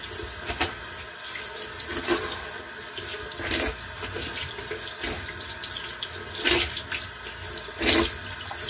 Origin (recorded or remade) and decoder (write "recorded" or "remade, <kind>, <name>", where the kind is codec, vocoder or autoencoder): recorded